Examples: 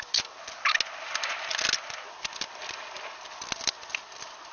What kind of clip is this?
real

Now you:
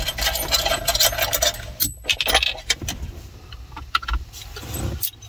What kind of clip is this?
real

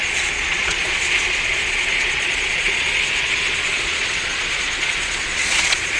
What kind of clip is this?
fake